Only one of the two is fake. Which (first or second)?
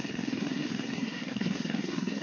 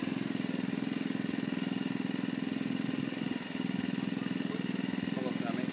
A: first